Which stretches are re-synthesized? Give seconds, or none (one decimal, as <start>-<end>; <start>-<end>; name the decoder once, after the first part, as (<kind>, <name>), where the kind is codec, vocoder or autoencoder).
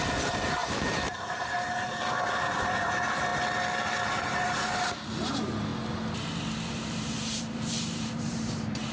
0.0-3.3 (vocoder, BigVGAN v2); 4.1-5.7; 6.7-8.9